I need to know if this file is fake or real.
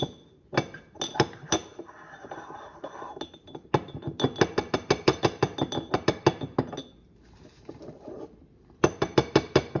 real